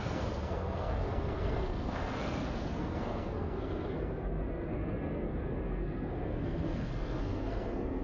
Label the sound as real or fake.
fake